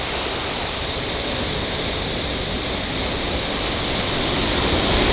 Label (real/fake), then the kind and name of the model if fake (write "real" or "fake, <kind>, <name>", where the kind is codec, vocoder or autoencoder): real